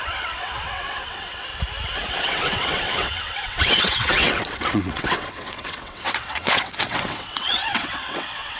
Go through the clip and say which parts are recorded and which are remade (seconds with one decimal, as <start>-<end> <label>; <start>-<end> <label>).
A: 0.0-1.5 remade; 1.5-2.1 recorded; 2.1-8.6 remade